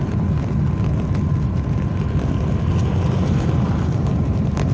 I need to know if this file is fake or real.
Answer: real